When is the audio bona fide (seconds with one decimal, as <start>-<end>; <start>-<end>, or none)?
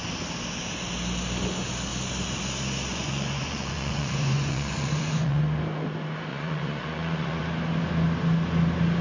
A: 0.0-2.9; 5.4-6.3; 7.4-9.0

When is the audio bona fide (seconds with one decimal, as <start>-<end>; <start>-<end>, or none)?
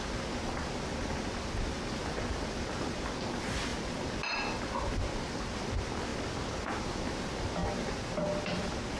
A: 0.0-9.0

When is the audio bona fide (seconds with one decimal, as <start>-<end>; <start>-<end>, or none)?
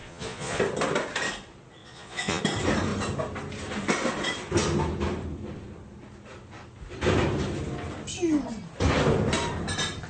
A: 0.6-1.8; 2.4-10.1